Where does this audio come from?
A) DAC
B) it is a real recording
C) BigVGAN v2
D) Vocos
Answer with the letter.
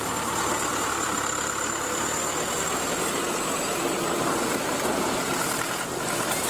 B